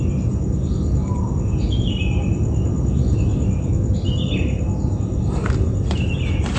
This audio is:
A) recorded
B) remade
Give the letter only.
A